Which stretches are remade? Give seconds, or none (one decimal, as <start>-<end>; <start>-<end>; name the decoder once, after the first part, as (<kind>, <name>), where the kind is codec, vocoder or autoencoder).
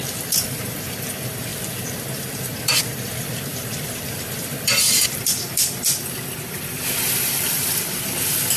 0.0-8.6 (vocoder, BigVGAN v2)